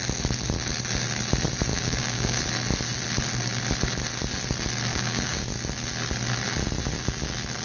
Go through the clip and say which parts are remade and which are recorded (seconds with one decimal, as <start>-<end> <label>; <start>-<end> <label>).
0.0-1.7 recorded; 1.7-2.4 remade; 2.4-4.9 recorded; 4.9-5.4 remade; 5.4-7.6 recorded